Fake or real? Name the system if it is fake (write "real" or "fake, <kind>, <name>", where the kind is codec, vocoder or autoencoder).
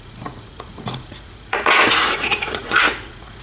fake, vocoder, Vocos